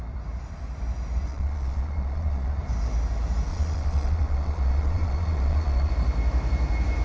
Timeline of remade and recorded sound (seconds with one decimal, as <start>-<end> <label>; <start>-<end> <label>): 0.0-1.3 recorded; 1.3-2.6 remade; 2.6-3.5 recorded; 3.5-5.9 remade; 5.9-7.0 recorded